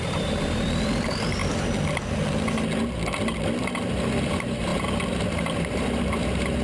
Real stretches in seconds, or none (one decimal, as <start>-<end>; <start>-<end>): 1.4-4.3